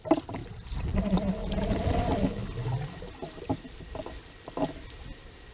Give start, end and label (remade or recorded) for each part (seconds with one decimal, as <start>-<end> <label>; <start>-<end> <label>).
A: 0.0-5.5 recorded